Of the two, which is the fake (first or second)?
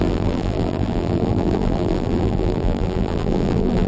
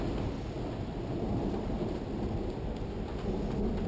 first